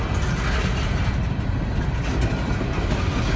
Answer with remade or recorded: recorded